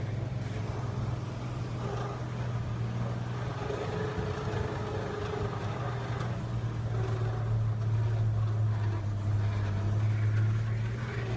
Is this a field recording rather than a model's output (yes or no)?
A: yes